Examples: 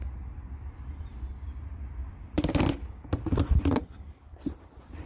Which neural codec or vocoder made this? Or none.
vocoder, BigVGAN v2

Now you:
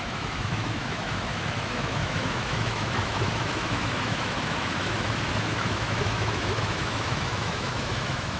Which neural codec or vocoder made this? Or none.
autoencoder, DAC-VAE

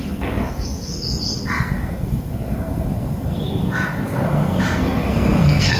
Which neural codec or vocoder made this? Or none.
codec, SNAC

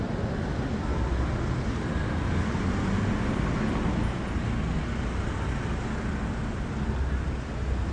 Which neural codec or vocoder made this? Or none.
none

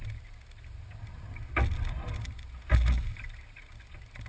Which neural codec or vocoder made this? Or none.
none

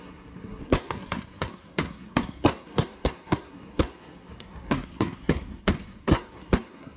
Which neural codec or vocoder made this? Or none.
codec, SNAC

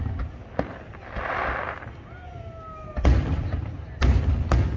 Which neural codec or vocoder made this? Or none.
none